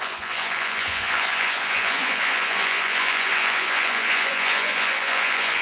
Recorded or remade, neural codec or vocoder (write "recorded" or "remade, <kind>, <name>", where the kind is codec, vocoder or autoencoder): remade, vocoder, Vocos